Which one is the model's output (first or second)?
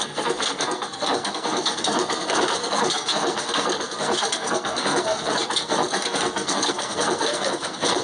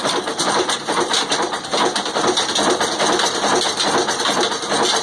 first